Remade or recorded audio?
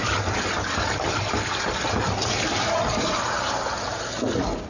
recorded